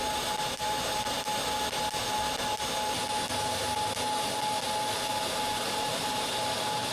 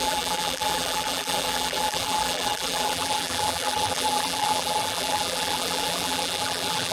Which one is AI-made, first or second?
second